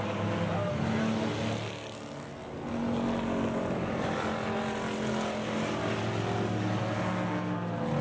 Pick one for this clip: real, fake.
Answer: real